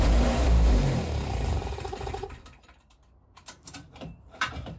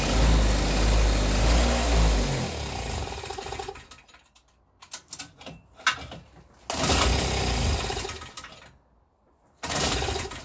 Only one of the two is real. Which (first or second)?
second